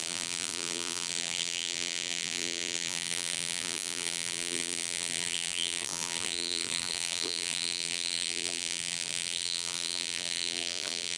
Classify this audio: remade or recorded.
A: remade